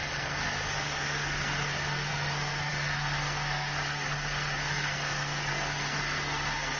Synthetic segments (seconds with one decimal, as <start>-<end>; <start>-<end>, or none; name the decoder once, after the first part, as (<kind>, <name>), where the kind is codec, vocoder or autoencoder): 0.0-6.8 (codec, SNAC)

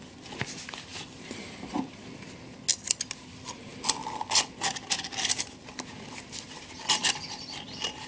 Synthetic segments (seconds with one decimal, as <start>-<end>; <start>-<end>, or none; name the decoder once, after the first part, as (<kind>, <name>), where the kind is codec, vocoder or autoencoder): none

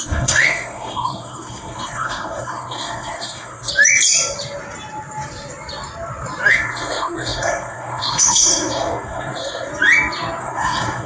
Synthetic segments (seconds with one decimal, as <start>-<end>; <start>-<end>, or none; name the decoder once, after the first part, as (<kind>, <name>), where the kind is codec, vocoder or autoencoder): 0.0-3.7 (codec, SNAC); 6.5-9.7; 10.4-11.1

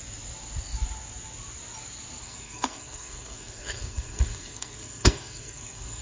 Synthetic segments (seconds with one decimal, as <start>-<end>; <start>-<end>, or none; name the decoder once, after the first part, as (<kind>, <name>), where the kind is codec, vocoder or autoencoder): 2.2-6.0 (codec, SNAC)

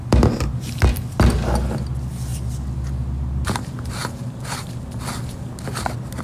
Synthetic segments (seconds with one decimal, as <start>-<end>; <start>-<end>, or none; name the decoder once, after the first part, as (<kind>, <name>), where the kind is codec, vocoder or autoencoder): none

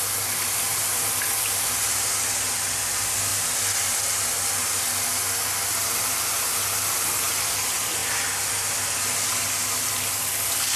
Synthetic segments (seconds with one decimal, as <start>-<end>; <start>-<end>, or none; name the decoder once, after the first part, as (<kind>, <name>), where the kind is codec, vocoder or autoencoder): 0.7-1.2 (vocoder, BigVGAN v2)